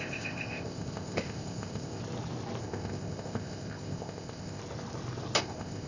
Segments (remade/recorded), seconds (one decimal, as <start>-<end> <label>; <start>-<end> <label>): 0.0-2.0 remade; 2.0-2.6 recorded; 2.6-4.6 remade; 4.6-5.4 recorded; 5.4-5.9 remade